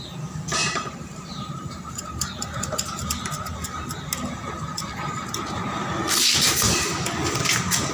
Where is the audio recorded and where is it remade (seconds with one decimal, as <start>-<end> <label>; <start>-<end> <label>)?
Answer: 0.0-0.6 recorded; 0.6-2.0 remade; 2.0-7.9 recorded